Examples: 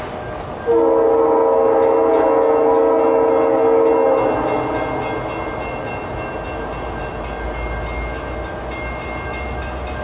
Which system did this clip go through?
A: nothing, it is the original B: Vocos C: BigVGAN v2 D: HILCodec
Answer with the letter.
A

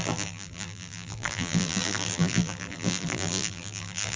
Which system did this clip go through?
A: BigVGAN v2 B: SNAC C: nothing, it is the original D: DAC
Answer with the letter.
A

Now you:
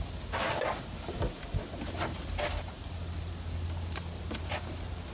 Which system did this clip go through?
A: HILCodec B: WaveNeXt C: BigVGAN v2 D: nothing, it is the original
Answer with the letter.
D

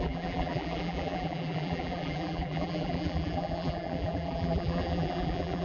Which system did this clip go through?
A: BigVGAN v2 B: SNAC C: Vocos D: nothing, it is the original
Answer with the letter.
A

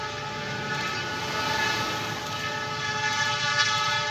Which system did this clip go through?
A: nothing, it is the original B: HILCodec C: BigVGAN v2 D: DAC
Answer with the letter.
A